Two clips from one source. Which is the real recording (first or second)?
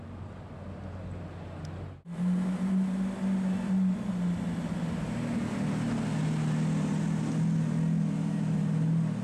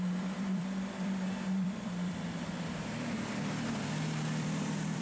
first